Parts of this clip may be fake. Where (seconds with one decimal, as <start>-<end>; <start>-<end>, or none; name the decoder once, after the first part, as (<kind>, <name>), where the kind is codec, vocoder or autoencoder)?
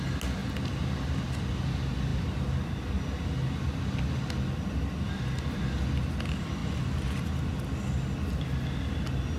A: none